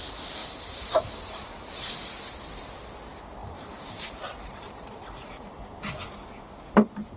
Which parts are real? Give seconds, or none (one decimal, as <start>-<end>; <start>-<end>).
0.0-0.4; 2.4-3.4; 5.6-7.2